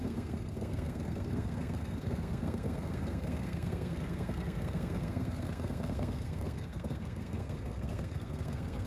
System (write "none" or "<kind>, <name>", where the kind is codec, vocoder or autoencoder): codec, SNAC